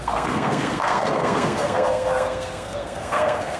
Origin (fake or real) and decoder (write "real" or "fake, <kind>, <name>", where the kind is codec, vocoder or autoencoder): fake, codec, SNAC